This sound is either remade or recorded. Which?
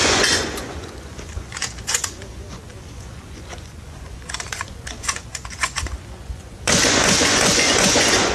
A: remade